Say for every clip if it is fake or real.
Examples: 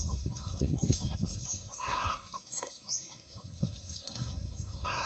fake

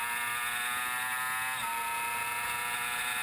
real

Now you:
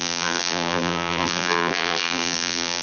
fake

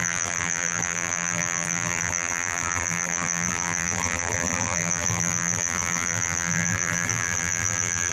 fake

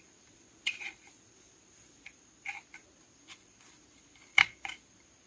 real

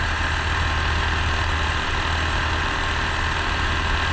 real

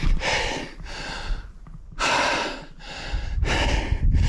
real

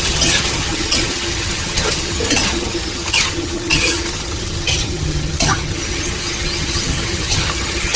fake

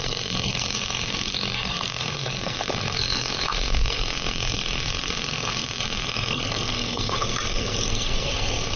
fake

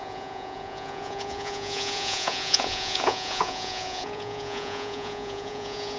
fake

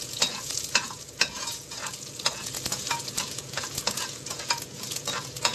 fake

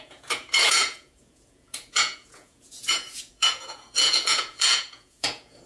fake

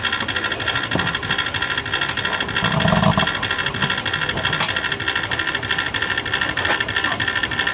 real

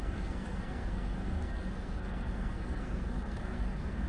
fake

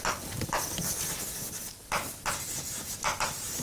real